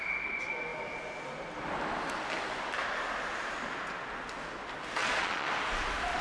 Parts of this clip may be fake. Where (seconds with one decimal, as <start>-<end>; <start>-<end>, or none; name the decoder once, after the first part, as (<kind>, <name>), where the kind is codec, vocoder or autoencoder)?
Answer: 5.0-5.5 (vocoder, Vocos)

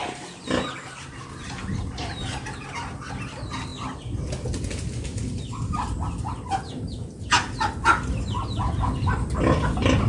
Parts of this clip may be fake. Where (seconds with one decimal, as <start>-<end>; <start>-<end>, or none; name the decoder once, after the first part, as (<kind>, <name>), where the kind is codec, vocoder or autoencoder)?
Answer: none

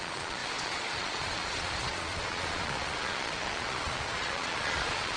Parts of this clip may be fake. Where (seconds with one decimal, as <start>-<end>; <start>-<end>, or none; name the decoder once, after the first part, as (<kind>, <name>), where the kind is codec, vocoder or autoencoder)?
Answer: 0.0-5.2 (vocoder, Vocos)

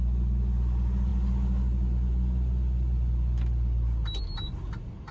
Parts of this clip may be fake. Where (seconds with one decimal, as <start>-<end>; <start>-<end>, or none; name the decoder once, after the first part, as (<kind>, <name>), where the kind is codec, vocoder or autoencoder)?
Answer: none

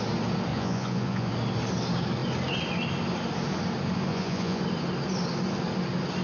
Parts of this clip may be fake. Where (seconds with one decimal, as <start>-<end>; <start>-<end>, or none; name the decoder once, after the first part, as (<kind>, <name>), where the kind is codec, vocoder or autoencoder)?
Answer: 0.5-1.3 (vocoder, Vocos); 4.1-4.6

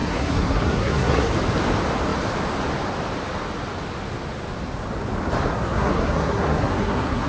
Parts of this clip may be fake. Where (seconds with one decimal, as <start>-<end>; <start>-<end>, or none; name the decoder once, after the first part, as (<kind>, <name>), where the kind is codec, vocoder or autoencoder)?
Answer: 0.0-1.3 (codec, SNAC); 5.5-7.3

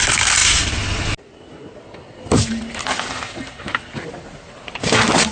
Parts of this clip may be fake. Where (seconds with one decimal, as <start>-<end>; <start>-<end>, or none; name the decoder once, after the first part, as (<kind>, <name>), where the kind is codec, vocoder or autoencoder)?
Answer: none